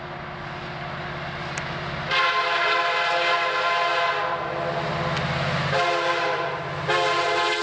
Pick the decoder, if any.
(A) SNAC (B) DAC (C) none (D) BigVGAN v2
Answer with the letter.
C